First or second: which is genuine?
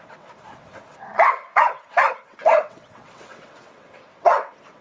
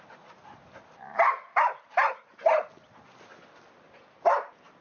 second